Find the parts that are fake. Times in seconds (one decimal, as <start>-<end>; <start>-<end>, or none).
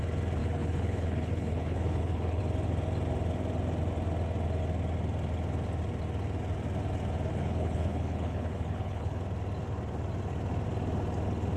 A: 0.4-2.4; 7.3-9.2